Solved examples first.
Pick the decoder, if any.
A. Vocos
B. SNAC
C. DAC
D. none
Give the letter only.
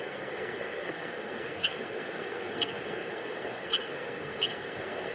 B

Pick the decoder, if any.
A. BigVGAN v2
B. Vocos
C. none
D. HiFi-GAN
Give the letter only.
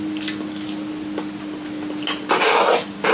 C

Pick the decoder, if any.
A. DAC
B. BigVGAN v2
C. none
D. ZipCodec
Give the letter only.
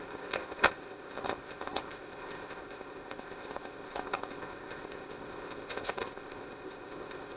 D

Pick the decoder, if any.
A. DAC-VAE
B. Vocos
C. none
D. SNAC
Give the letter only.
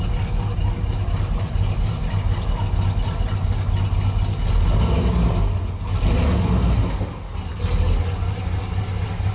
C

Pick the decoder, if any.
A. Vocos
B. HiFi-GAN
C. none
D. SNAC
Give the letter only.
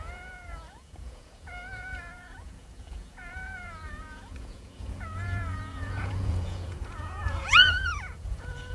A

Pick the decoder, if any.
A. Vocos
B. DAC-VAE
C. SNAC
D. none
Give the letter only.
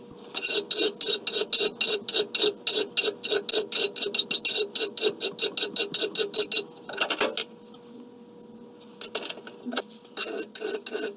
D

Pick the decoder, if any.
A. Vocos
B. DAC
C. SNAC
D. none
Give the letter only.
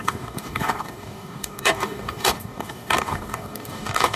B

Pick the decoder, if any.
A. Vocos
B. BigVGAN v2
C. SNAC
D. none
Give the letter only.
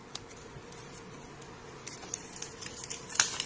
D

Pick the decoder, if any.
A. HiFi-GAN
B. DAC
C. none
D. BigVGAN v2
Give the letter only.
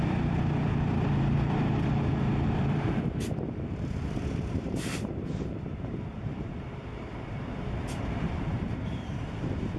D